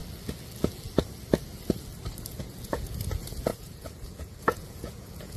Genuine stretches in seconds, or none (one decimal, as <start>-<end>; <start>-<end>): 0.0-2.4